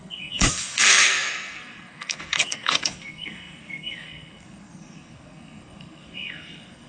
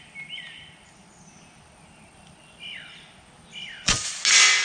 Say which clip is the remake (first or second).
first